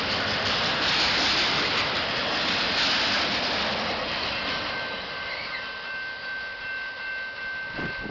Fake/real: real